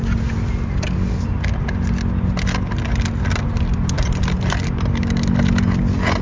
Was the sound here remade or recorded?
recorded